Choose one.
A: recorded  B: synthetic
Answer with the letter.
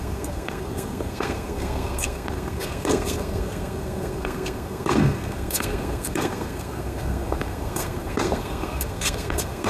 B